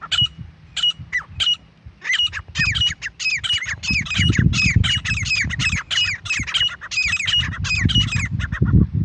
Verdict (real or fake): real